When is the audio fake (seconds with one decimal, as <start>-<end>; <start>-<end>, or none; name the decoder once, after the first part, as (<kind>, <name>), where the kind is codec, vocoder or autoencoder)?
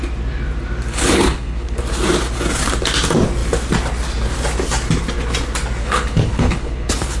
0.9-1.8 (codec, HILCodec); 5.8-7.2